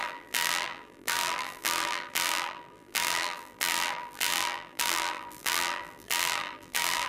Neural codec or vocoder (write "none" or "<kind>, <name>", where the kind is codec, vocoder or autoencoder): vocoder, BigVGAN v2